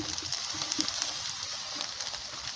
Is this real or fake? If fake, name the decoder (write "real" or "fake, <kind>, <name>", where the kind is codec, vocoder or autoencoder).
real